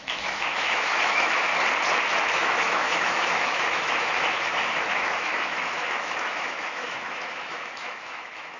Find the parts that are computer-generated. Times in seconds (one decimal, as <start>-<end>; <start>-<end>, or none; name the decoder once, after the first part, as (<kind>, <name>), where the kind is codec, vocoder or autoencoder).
0.0-1.5 (autoencoder, DAC-VAE); 2.3-8.6